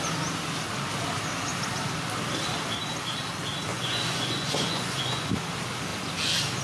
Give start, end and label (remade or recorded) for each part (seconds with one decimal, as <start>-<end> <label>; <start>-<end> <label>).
0.0-3.7 recorded; 3.7-5.3 remade; 5.3-6.6 recorded